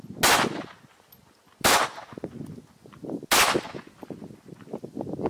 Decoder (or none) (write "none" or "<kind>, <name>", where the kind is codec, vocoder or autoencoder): none